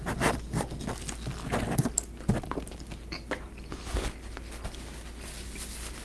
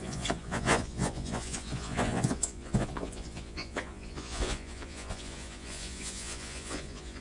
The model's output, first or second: second